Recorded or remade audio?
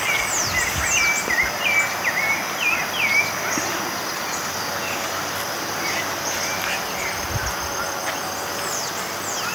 recorded